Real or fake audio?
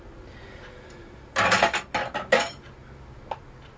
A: real